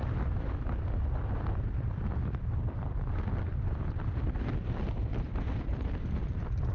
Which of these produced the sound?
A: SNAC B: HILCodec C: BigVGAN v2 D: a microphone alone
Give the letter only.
C